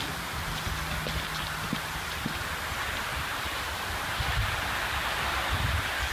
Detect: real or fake real